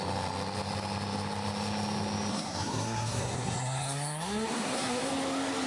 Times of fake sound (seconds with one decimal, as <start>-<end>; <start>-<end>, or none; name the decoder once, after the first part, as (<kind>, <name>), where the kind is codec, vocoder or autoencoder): 2.3-5.1 (codec, SNAC)